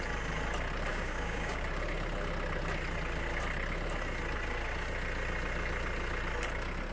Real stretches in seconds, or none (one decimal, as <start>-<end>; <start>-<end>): 0.0-0.9; 1.6-6.9